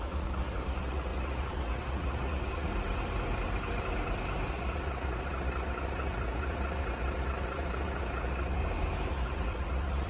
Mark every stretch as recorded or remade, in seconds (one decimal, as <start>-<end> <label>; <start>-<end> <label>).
0.0-2.7 remade; 2.7-4.5 recorded; 4.5-8.6 remade; 8.6-9.1 recorded; 9.1-10.1 remade